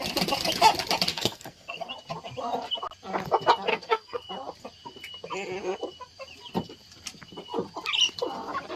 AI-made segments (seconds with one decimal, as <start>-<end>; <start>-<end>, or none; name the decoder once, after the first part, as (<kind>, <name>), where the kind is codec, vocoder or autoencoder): 1.1-1.9 (codec, SNAC); 3.7-4.3